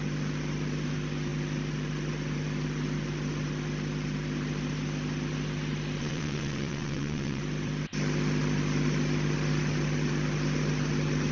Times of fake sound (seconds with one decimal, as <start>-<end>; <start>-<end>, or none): 6.0-7.4